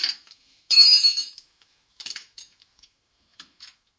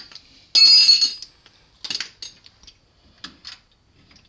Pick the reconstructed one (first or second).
first